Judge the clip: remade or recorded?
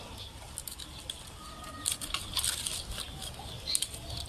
recorded